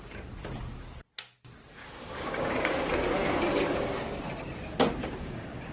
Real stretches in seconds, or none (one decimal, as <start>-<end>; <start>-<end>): 0.0-1.8; 4.3-5.0